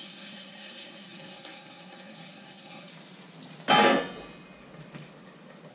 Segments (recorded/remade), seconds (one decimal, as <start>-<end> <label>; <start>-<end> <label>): 0.0-2.9 remade; 2.9-5.7 recorded